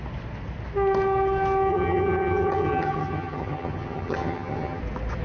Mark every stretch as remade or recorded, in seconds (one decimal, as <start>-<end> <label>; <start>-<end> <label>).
0.0-1.7 recorded; 1.7-4.8 remade; 4.8-5.2 recorded